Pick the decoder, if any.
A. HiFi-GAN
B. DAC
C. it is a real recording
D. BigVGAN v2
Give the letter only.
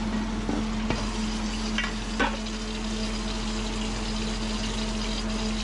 C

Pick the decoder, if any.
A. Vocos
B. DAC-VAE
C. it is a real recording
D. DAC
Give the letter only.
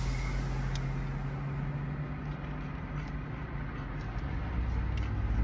C